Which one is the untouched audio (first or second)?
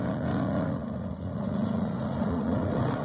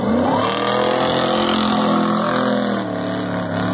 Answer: second